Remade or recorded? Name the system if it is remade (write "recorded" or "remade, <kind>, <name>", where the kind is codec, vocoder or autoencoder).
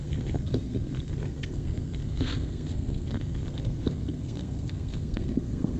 remade, codec, SNAC